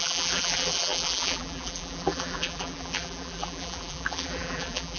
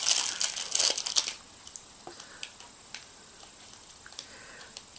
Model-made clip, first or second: first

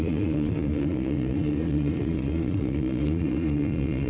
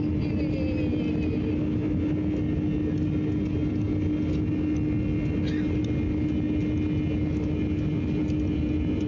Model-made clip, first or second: first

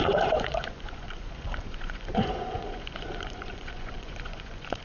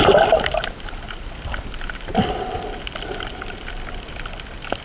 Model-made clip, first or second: first